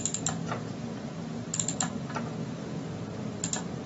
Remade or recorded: recorded